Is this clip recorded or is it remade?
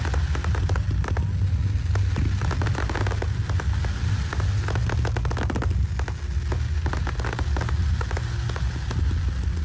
recorded